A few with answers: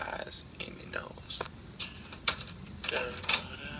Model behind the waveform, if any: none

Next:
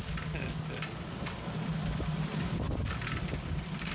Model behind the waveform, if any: none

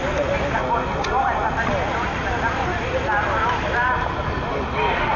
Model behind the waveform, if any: none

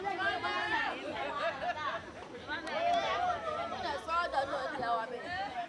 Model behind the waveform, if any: none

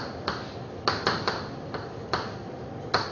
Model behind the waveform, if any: none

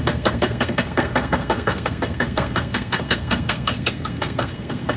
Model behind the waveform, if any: codec, SNAC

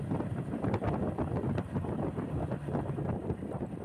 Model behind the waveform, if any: vocoder, BigVGAN v2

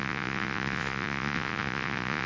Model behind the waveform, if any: vocoder, Vocos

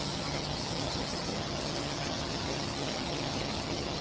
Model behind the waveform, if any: vocoder, HiFi-GAN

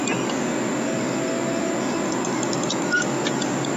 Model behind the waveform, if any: none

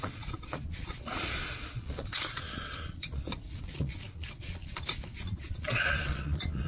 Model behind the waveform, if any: vocoder, Vocos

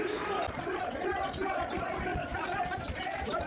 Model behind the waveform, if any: none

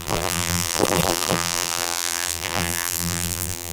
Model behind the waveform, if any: vocoder, BigVGAN v2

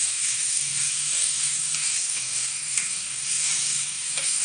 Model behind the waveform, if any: codec, DAC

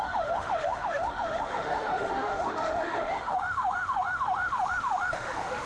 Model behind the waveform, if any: autoencoder, DAC-VAE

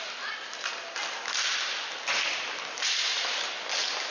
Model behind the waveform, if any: none